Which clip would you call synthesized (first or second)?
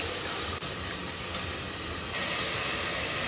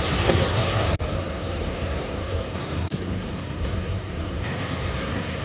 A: second